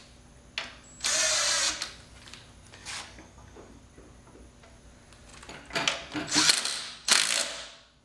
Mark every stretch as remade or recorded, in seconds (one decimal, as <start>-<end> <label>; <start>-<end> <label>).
0.0-2.8 recorded; 2.8-3.8 remade; 3.8-8.0 recorded